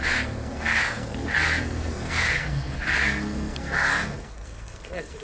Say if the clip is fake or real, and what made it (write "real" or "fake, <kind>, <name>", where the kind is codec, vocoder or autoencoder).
fake, codec, SNAC